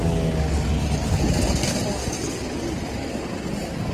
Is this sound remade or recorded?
recorded